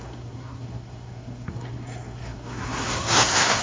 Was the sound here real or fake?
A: fake